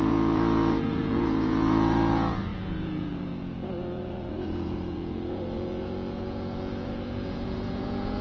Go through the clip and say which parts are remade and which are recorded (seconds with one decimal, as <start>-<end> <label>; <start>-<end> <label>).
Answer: 0.0-8.2 remade